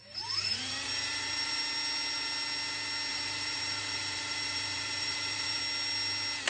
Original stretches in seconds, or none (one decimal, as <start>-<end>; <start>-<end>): 1.6-3.1; 5.6-6.5